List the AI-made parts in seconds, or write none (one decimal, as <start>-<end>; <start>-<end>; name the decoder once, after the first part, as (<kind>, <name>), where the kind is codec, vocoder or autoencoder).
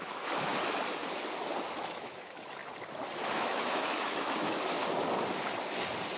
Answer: 0.0-0.5 (autoencoder, DAC-VAE); 1.9-2.6; 3.3-4.8